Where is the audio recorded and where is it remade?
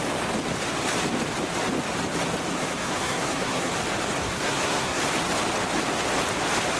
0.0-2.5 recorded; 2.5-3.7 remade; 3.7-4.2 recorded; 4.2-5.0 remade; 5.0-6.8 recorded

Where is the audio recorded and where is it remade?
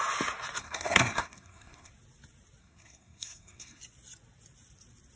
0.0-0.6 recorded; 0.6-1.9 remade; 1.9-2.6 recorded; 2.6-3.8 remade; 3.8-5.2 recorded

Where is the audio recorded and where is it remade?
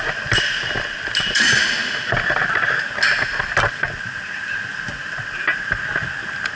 0.0-6.6 recorded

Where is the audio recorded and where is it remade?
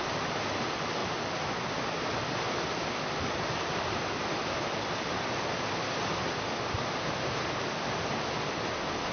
0.0-9.1 recorded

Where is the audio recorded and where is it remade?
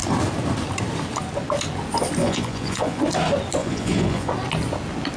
0.0-2.2 recorded; 2.2-3.0 remade; 3.0-3.6 recorded; 3.6-4.3 remade; 4.3-5.2 recorded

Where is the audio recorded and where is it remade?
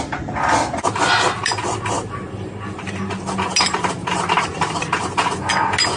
0.0-6.0 recorded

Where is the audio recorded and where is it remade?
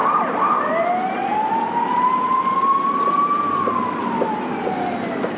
0.0-5.4 recorded